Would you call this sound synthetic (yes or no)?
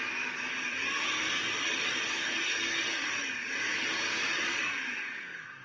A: yes